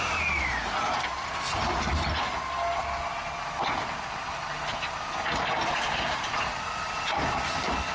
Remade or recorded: recorded